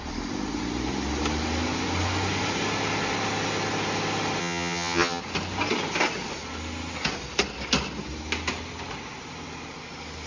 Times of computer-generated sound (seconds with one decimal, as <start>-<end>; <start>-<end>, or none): 4.4-5.2